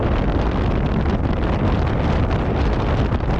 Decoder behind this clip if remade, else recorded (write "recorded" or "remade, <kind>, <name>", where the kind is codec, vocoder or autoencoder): recorded